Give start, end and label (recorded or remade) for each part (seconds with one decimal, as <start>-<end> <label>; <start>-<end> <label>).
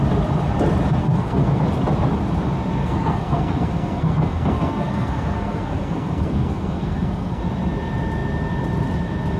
0.0-1.0 recorded; 1.0-1.6 remade; 1.6-2.8 recorded; 2.8-7.4 remade; 7.4-9.4 recorded